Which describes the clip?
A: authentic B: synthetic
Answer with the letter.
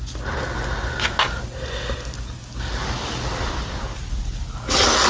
A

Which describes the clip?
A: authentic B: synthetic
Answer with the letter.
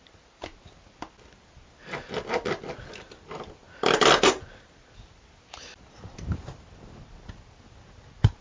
A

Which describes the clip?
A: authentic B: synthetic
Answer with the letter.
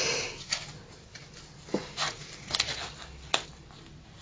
A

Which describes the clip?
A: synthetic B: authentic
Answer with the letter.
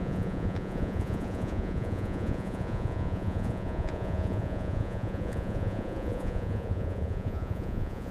A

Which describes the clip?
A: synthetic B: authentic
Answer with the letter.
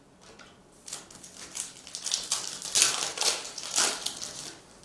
B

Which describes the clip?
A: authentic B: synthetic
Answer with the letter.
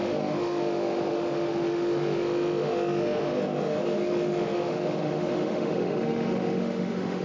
B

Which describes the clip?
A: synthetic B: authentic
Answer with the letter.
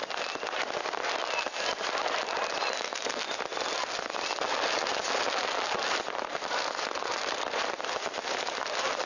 B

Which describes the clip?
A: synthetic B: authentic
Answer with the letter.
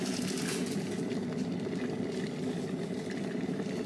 B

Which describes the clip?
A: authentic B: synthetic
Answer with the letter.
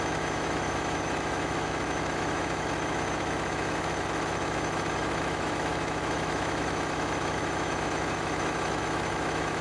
B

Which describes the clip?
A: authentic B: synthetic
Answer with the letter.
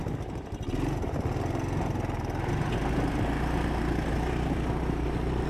A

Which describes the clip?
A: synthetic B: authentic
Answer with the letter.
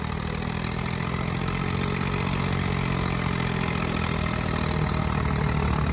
B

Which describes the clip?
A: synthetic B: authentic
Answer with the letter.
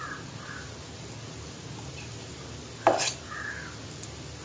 B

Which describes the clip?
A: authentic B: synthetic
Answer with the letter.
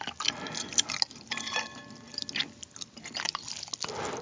A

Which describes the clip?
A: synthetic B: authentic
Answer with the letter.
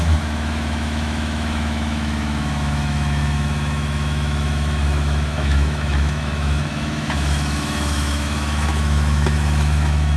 A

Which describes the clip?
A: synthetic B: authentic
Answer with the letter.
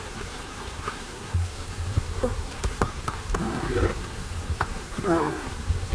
A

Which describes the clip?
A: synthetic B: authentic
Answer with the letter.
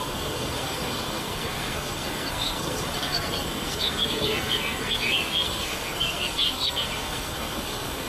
A